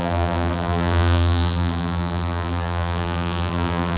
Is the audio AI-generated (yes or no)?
yes